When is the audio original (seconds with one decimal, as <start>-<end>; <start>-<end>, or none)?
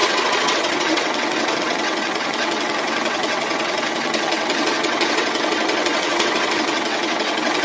none